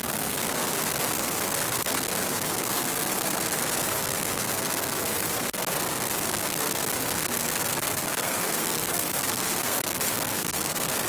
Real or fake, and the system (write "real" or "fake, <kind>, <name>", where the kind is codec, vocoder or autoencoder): fake, codec, SNAC